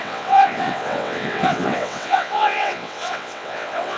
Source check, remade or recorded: remade